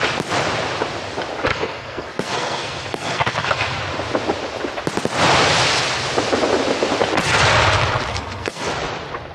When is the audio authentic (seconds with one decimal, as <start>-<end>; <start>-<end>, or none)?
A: 0.0-1.5; 3.8-8.1; 8.7-9.3